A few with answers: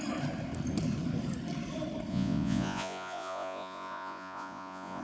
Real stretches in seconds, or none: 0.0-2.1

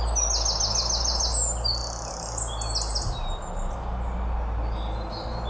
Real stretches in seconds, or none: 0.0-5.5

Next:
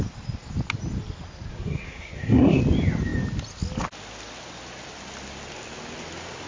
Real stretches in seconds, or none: 0.0-1.5; 2.6-6.5